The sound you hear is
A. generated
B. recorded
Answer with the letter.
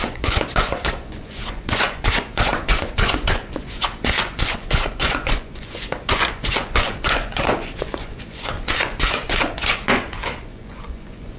A